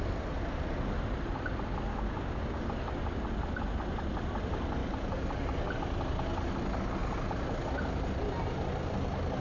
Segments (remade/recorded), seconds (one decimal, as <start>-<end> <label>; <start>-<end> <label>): 0.0-1.9 recorded; 1.9-2.6 remade; 2.6-9.4 recorded